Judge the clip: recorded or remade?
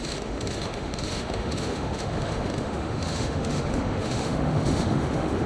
remade